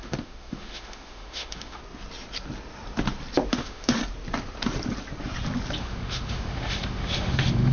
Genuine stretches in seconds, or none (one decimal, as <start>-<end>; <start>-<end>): 1.8-3.5; 4.0-5.8